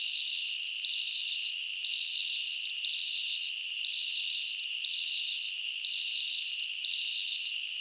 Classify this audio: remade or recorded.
recorded